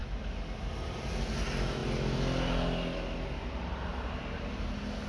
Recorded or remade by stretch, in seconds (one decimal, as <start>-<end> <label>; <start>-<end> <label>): 0.0-5.1 recorded